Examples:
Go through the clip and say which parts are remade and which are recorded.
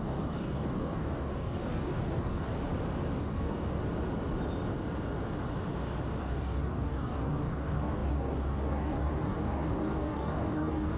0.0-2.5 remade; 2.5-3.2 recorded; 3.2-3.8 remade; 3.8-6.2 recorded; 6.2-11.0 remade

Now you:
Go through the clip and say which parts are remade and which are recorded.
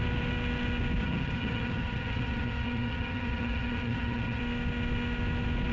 0.0-1.0 recorded; 1.0-4.4 remade; 4.4-5.7 recorded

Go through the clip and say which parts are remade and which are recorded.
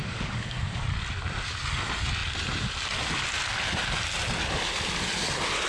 0.0-0.9 remade; 0.9-5.7 recorded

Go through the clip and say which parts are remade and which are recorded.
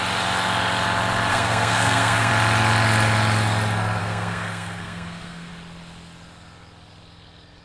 0.0-1.3 recorded; 1.3-2.3 remade; 2.3-4.0 recorded; 4.0-5.5 remade; 5.5-7.6 recorded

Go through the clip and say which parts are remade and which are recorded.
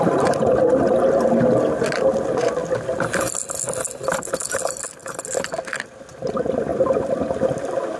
0.0-8.0 recorded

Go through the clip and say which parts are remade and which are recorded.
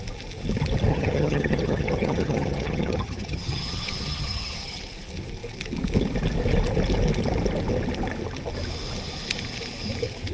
0.0-0.9 recorded; 0.9-4.8 remade; 4.8-10.3 recorded